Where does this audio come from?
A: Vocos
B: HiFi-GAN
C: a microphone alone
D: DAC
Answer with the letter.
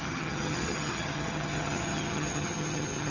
B